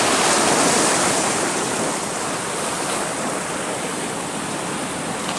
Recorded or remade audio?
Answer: remade